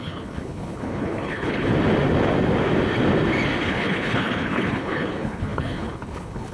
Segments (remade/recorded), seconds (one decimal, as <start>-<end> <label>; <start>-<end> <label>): 0.0-1.7 remade; 1.7-3.6 recorded; 3.6-6.5 remade